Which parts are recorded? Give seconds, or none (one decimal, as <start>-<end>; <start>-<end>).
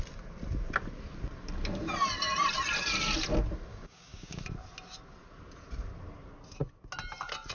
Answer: 0.0-3.7; 4.4-7.5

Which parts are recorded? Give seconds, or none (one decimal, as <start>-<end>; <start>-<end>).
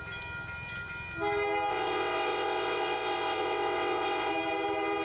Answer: 0.0-1.7; 4.3-5.0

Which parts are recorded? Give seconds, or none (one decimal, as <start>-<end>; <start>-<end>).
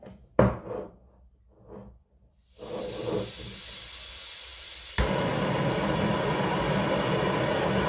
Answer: 0.0-4.5; 5.7-7.9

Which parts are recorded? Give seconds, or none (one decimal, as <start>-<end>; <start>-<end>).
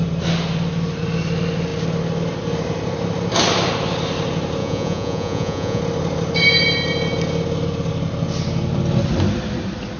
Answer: 0.0-4.6; 5.8-10.0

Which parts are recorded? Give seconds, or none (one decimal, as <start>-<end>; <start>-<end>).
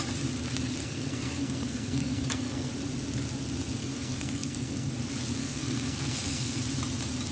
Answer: 0.0-0.8; 2.7-3.8; 4.9-5.4; 6.6-7.3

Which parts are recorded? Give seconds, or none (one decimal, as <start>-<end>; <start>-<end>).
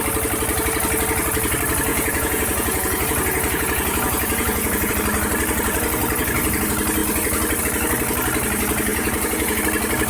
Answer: 0.0-1.9; 4.9-8.9; 9.6-10.1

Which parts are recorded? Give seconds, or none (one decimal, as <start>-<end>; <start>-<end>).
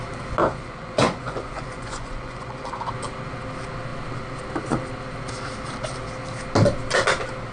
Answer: 0.0-0.4; 2.9-7.5